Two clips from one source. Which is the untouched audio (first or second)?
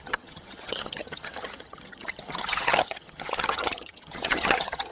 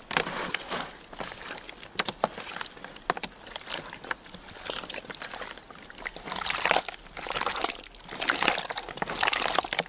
second